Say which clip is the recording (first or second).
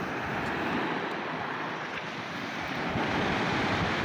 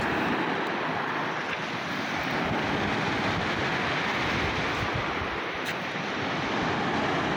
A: second